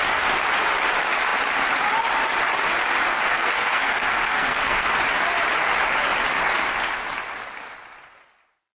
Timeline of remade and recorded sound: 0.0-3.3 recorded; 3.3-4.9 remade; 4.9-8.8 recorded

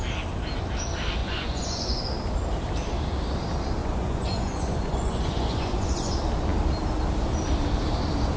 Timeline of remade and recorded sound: 0.0-1.2 recorded; 1.2-2.0 remade; 2.0-3.8 recorded; 3.8-6.1 remade; 6.1-8.4 recorded